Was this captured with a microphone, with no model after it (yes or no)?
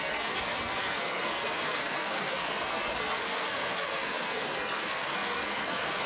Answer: no